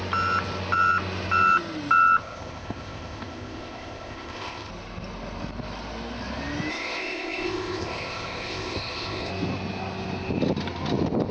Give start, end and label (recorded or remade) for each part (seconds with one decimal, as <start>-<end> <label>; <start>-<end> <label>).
0.0-2.2 recorded; 2.2-4.7 remade; 4.7-6.7 recorded; 6.7-9.3 remade; 9.3-11.3 recorded

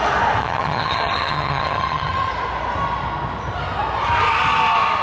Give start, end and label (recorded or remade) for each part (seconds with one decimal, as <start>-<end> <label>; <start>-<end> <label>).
0.0-0.4 recorded; 0.4-2.3 remade; 2.3-5.0 recorded

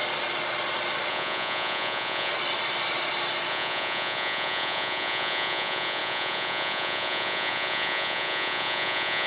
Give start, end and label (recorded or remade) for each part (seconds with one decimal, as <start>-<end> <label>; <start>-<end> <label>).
0.0-1.1 recorded; 1.1-2.3 remade; 2.3-3.5 recorded; 3.5-9.3 remade

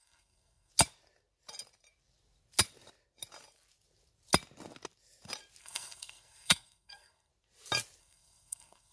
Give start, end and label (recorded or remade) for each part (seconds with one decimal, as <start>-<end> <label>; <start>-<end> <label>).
0.0-0.7 remade; 0.7-5.6 recorded; 5.6-7.3 remade; 7.3-8.0 recorded; 8.0-8.9 remade

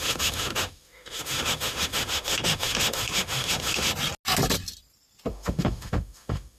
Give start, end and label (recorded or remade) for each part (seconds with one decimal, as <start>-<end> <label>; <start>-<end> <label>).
0.0-3.9 remade; 3.9-5.3 recorded; 5.3-6.6 remade

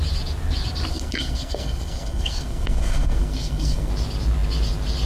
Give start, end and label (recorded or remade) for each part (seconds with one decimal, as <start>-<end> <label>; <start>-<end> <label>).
0.0-0.9 recorded; 0.9-3.9 remade; 3.9-5.1 recorded